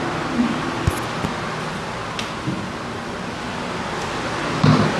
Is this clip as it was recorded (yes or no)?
yes